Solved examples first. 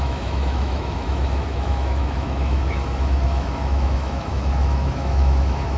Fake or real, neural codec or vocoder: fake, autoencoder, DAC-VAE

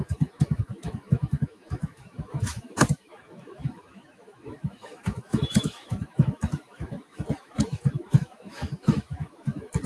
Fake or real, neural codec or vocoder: fake, autoencoder, DAC-VAE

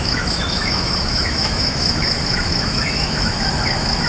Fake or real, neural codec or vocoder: fake, autoencoder, DAC-VAE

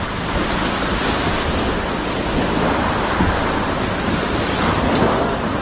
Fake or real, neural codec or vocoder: real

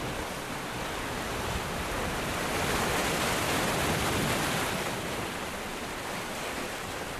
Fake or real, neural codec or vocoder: real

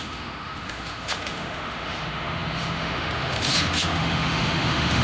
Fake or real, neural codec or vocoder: fake, autoencoder, DAC-VAE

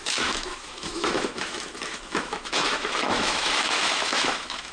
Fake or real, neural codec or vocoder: fake, autoencoder, DAC-VAE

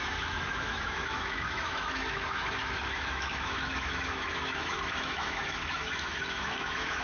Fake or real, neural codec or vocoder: fake, autoencoder, DAC-VAE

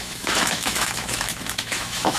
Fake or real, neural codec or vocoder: fake, autoencoder, DAC-VAE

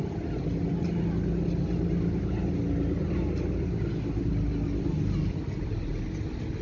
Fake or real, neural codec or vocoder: real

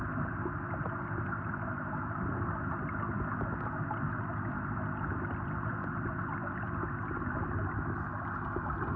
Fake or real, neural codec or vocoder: real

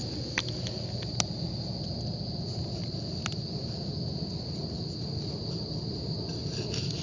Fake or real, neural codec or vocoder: real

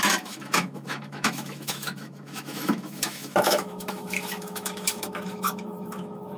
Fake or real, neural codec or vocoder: fake, autoencoder, DAC-VAE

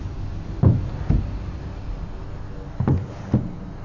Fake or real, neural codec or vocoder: real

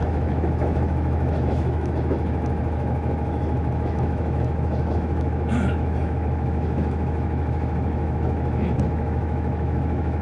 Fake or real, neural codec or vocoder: fake, autoencoder, DAC-VAE